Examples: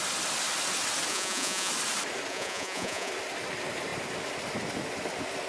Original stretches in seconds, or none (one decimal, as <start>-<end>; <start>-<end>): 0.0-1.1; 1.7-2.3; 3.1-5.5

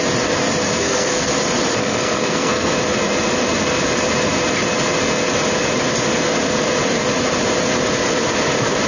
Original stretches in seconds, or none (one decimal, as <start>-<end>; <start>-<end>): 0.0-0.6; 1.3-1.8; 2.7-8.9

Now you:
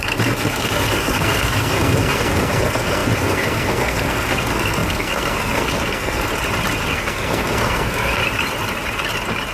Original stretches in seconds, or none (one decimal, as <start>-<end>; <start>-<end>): 6.3-6.9; 8.2-9.5